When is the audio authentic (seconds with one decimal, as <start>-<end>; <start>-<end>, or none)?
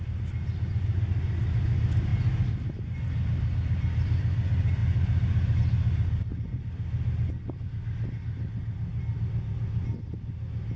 0.0-10.8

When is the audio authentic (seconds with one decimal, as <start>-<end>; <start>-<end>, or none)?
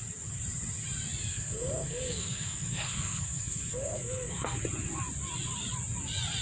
0.0-1.3; 4.6-6.4